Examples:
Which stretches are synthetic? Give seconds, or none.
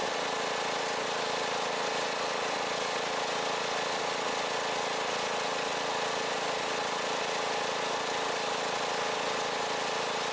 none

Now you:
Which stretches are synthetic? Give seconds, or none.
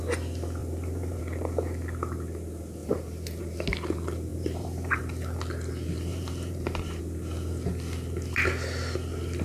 0.6-1.2 (vocoder, BigVGAN v2); 2.8-3.4; 4.3-5.0; 6.1-7.0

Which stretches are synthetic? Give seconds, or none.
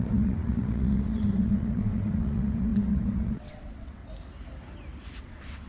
0.0-4.0 (vocoder, WaveNeXt); 5.2-5.7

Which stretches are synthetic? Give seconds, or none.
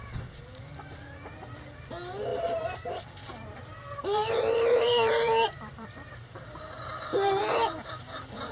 2.3-7.4 (vocoder, BigVGAN v2)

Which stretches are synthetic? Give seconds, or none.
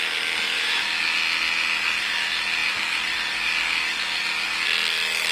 2.6-4.6 (vocoder, BigVGAN v2)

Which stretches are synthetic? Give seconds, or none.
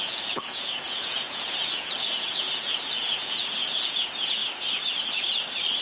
0.0-4.4 (vocoder, Vocos)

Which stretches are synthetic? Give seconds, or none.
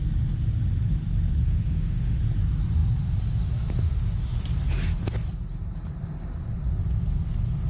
1.4-2.2 (autoencoder, DAC-VAE)